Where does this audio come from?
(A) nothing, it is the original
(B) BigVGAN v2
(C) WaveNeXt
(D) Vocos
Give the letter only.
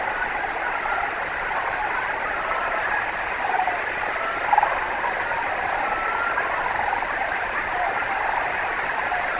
A